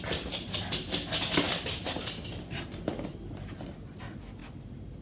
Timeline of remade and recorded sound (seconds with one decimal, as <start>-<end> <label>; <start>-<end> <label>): 0.0-5.0 recorded